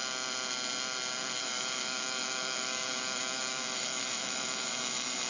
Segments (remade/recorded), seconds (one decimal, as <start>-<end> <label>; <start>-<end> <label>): 0.0-1.4 recorded; 1.4-5.3 remade